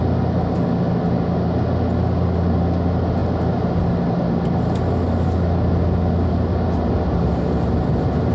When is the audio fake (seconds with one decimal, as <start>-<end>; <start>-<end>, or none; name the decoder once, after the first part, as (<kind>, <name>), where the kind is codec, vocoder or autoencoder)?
none